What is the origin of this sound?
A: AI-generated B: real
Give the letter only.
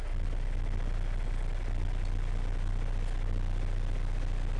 B